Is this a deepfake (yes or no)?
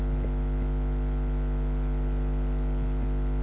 no